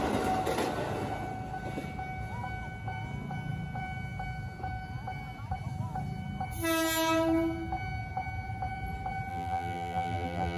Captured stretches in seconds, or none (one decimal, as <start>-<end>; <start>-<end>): 0.0-9.3